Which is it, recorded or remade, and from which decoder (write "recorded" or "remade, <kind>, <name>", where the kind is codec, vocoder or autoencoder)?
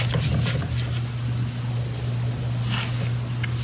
recorded